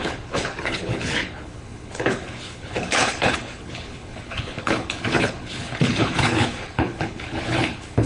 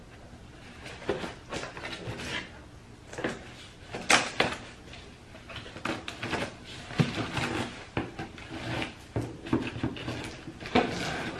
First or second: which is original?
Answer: second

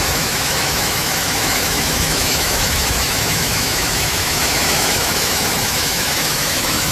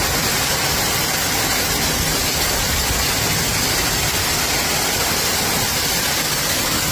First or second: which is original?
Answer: second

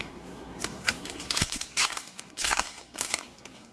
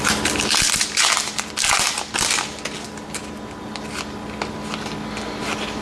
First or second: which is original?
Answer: second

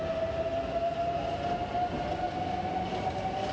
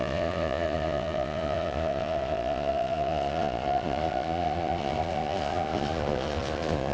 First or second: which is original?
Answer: first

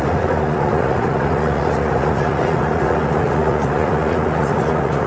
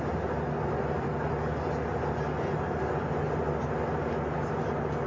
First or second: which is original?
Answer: second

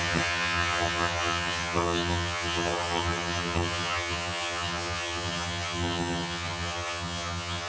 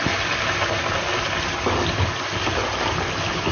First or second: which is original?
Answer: second